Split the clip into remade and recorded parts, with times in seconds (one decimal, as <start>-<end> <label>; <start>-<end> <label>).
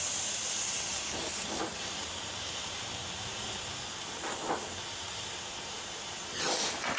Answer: 0.0-7.0 recorded